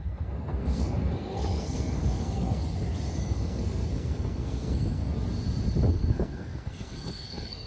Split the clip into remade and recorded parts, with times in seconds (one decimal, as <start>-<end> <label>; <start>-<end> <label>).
0.0-2.6 remade; 2.6-3.2 recorded; 3.2-5.0 remade; 5.0-5.9 recorded; 5.9-7.7 remade